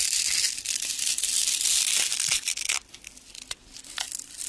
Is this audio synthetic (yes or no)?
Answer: no